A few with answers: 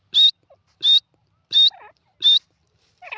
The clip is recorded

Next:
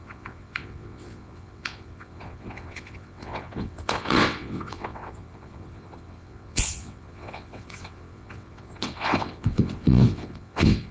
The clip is remade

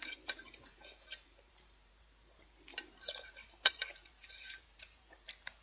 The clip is remade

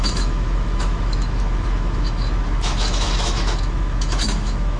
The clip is remade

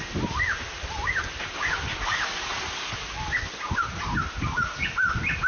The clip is recorded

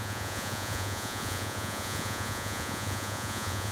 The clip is remade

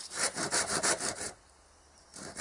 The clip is remade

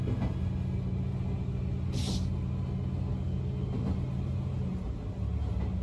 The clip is recorded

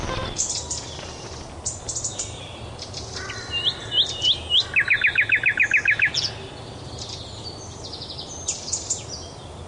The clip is recorded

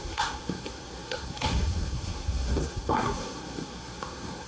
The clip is remade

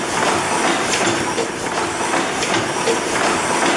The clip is recorded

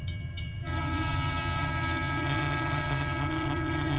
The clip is remade